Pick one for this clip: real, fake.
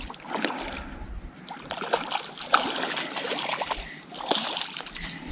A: real